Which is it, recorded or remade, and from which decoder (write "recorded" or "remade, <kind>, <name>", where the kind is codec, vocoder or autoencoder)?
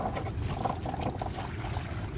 recorded